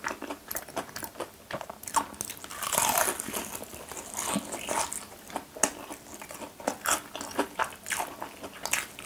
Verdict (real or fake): real